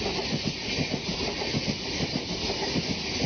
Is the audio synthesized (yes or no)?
no